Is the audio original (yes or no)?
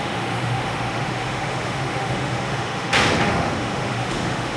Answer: no